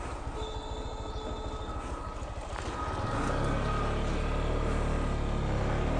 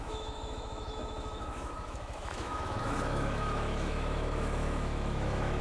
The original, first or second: first